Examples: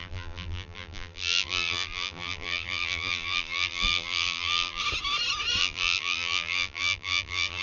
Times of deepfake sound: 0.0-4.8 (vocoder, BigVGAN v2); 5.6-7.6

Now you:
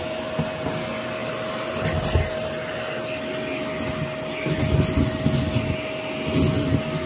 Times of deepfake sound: none